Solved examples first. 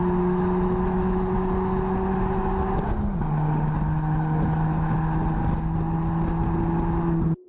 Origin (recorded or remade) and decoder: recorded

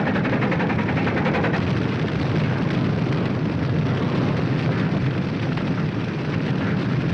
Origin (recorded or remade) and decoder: recorded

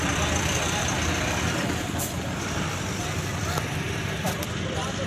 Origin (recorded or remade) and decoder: remade, vocoder, BigVGAN v2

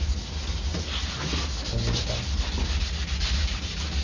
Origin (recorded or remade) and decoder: recorded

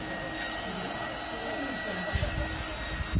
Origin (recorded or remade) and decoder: recorded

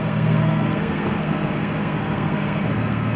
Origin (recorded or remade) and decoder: remade, codec, SNAC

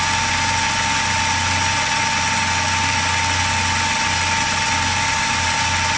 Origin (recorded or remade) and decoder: recorded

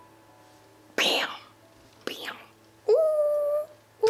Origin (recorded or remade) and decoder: recorded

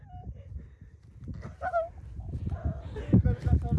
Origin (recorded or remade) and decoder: recorded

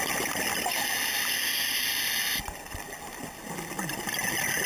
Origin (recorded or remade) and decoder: recorded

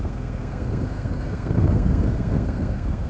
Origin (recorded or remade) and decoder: remade, codec, SNAC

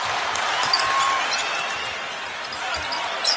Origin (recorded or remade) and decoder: recorded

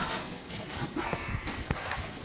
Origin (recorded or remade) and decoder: remade, codec, SNAC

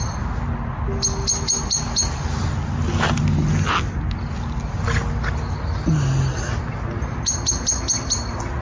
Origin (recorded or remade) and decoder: recorded